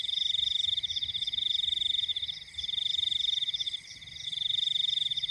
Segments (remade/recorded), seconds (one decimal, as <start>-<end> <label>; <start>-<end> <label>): 0.0-5.3 recorded